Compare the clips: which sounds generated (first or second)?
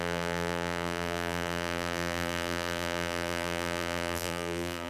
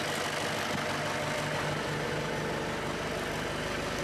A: first